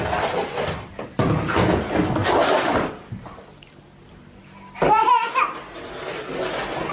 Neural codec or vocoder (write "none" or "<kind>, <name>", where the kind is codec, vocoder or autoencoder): none